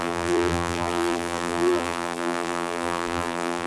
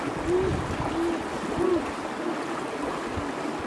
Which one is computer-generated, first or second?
first